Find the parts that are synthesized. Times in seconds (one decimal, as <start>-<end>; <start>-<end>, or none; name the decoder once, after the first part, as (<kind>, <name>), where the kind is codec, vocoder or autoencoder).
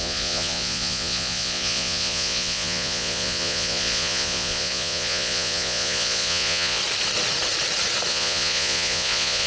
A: 0.0-6.8 (vocoder, Vocos); 8.1-9.5